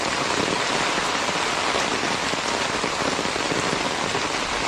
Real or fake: real